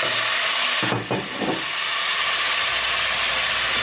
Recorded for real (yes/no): yes